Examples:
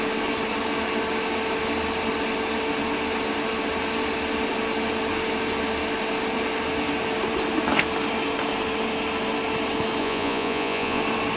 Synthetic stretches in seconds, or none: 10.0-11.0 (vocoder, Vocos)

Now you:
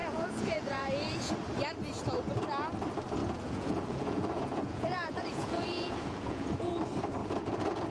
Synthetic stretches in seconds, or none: 0.0-1.3 (vocoder, Vocos); 3.2-6.7; 7.2-7.9

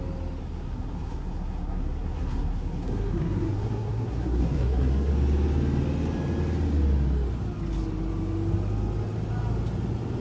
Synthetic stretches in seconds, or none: 0.4-5.1 (codec, SNAC)

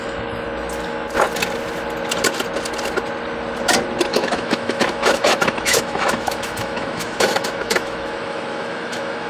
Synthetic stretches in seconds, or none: 4.1-9.3 (autoencoder, DAC-VAE)

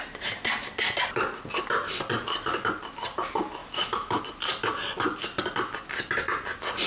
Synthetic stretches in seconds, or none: 3.6-4.2 (autoencoder, DAC-VAE)

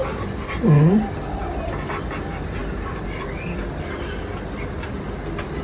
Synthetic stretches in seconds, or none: none

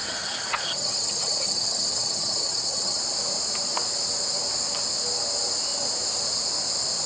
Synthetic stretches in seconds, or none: 0.0-3.0 (vocoder, HiFi-GAN)